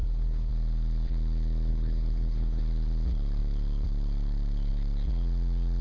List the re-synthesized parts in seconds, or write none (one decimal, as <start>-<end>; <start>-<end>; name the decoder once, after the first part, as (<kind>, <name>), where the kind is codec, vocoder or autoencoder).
0.0-0.5 (codec, HILCodec); 1.7-2.6